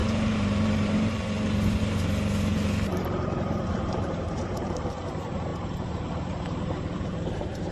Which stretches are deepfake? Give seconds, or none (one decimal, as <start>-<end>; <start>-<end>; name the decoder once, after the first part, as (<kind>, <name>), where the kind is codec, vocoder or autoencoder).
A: 0.0-7.7 (vocoder, BigVGAN v2)